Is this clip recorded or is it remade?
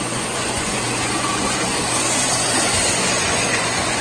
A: remade